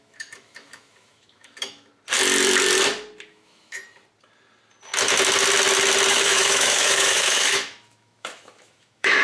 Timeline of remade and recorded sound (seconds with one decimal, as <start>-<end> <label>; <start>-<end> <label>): 0.0-1.9 remade; 1.9-3.3 recorded; 3.3-3.8 remade; 3.8-6.1 recorded; 6.1-9.2 remade